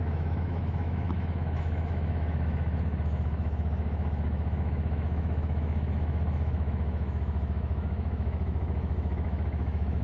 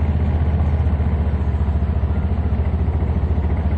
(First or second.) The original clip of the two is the second